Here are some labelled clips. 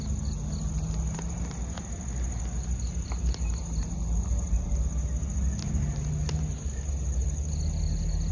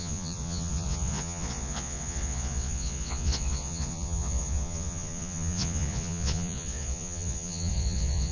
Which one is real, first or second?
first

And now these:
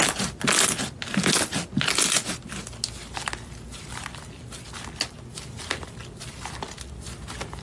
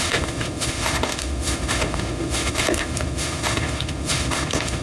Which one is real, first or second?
first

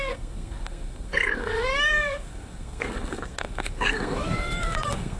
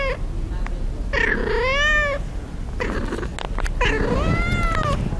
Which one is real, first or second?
second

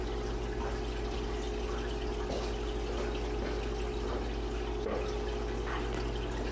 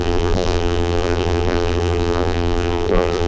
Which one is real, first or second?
first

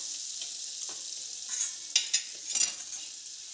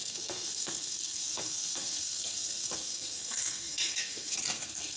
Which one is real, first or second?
first